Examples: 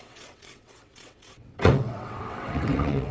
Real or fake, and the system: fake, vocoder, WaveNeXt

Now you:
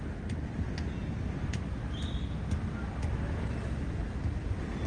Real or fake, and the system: real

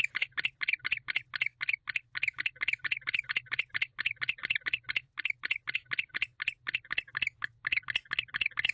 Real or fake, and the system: real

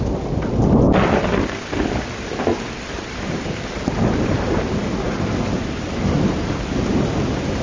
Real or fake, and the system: real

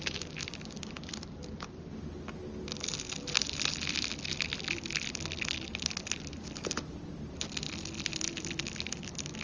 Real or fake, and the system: real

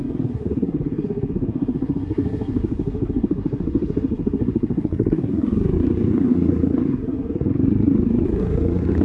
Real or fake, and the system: fake, codec, SNAC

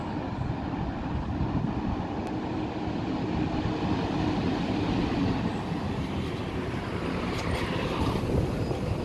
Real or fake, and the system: real